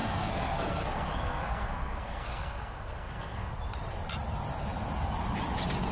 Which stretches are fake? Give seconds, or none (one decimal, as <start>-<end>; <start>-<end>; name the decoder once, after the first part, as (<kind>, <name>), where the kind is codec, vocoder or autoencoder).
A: 0.0-3.5 (codec, SNAC)